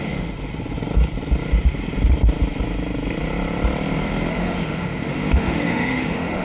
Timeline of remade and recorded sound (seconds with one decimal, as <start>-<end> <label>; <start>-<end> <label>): 0.0-0.5 remade; 0.5-4.3 recorded; 4.3-6.4 remade